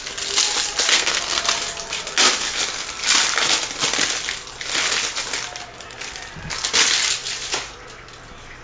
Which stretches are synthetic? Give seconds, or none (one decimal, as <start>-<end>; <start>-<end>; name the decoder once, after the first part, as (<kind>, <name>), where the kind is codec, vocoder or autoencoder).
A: 0.9-1.4 (codec, SNAC)